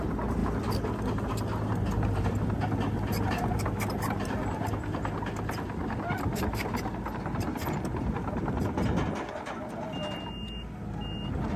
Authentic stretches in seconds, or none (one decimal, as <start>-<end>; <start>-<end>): 0.0-11.6